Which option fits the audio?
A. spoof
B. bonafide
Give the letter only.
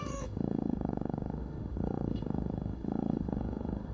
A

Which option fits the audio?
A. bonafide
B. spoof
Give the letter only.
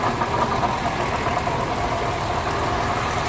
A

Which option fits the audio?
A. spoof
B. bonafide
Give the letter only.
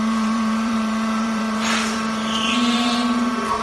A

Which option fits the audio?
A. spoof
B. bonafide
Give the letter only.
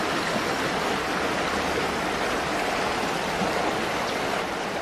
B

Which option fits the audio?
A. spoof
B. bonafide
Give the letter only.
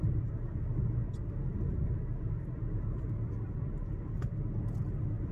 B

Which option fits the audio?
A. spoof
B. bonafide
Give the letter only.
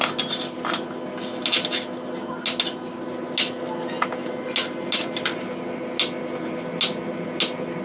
B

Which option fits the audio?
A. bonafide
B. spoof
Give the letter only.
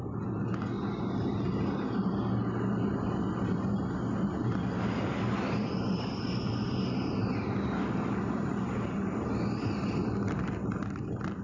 A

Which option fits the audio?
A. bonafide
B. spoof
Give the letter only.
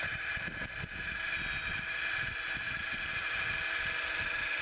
A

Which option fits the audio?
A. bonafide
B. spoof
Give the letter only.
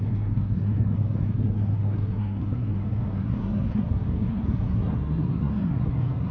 B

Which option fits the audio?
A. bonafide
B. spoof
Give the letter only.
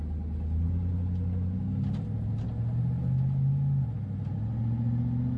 A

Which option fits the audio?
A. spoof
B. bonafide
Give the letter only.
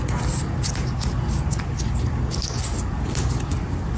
B